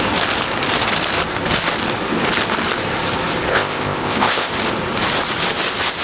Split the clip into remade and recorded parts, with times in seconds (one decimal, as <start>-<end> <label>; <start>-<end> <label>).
0.0-3.5 recorded; 3.5-4.5 remade; 4.5-6.0 recorded